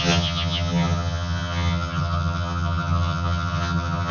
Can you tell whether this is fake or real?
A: fake